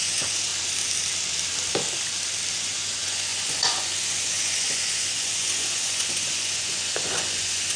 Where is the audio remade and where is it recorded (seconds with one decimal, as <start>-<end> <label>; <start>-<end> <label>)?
0.0-0.5 remade; 0.5-2.5 recorded; 2.5-7.8 remade